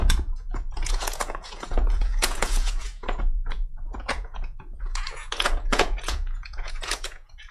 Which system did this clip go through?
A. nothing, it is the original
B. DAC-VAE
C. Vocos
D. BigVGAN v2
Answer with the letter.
C